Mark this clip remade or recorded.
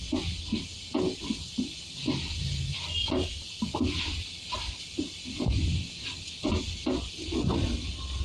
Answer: recorded